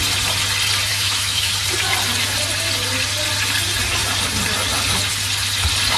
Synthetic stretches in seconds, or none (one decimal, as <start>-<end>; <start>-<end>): 0.9-1.5